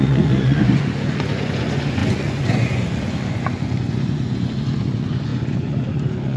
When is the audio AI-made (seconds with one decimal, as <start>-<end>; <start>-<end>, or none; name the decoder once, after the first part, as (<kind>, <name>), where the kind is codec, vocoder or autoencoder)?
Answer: 0.0-6.4 (vocoder, Vocos)